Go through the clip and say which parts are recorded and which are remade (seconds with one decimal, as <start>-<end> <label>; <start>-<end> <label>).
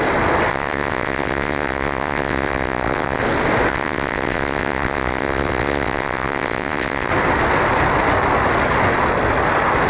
0.0-0.5 recorded; 0.5-3.2 remade; 3.2-3.7 recorded; 3.7-7.1 remade; 7.1-9.9 recorded